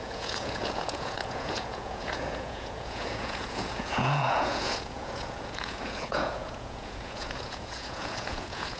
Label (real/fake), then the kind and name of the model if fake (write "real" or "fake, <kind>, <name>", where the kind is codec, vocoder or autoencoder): fake, vocoder, Vocos